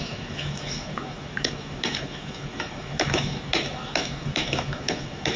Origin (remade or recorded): remade